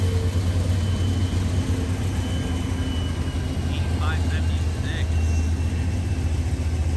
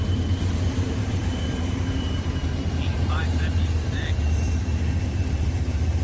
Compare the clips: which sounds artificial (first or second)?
second